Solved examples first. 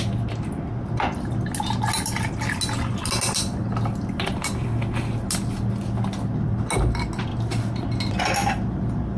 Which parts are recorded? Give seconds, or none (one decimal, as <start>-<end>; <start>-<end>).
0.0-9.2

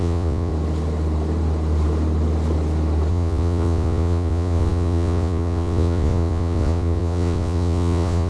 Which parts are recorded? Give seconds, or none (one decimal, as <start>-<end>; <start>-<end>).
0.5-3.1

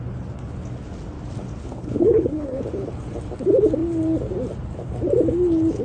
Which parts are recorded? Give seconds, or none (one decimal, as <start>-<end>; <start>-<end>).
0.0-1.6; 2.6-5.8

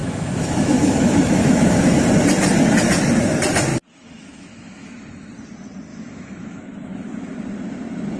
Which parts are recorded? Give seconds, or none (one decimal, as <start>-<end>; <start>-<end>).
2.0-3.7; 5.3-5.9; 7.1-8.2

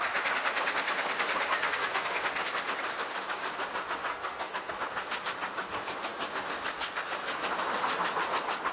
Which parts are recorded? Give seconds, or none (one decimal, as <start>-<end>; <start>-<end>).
0.0-1.5; 2.2-4.1; 4.7-8.7

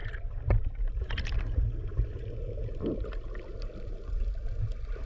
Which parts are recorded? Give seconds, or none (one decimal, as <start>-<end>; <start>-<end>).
0.0-5.1

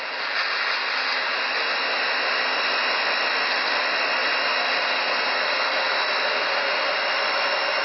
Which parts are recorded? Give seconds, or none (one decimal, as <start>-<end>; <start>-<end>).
0.0-7.8